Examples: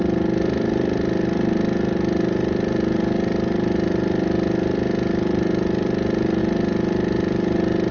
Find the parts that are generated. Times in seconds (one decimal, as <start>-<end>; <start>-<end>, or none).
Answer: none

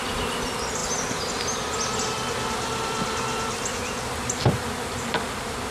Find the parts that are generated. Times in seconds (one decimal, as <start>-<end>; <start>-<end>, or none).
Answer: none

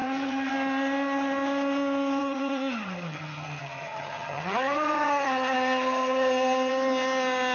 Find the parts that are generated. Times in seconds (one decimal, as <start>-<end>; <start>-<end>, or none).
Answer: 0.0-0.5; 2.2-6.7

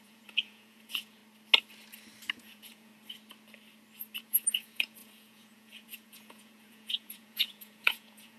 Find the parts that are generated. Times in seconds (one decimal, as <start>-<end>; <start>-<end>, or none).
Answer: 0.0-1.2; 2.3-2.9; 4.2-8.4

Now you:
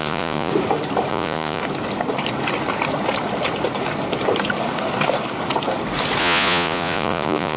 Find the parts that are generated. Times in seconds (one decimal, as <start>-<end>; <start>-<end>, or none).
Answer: 0.0-0.5; 1.1-1.6; 6.2-7.6

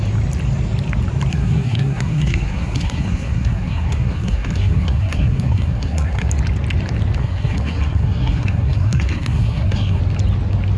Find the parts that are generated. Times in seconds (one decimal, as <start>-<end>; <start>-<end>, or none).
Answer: 1.3-6.3; 7.2-10.0

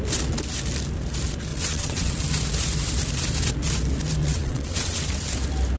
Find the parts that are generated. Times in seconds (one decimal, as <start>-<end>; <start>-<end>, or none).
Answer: 1.5-2.2; 4.2-5.1